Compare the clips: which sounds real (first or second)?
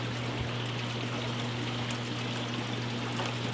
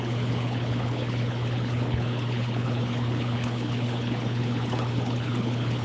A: first